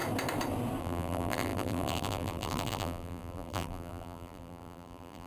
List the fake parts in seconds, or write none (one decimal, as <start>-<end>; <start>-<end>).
0.8-5.3